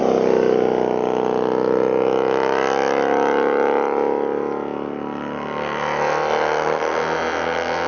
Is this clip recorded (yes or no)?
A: yes